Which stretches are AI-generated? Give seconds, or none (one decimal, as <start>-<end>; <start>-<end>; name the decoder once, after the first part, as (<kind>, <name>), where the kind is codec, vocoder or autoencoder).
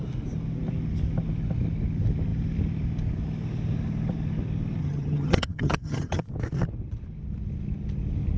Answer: 4.8-6.2 (vocoder, HiFi-GAN)